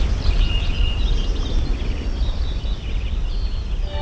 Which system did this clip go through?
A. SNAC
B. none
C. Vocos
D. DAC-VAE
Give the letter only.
B